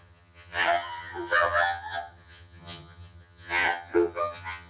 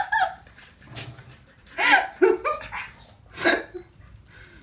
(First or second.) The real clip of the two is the second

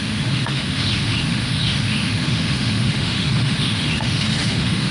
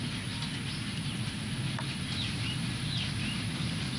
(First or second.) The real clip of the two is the second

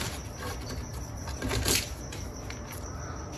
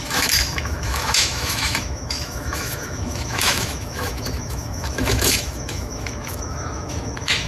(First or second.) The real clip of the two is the first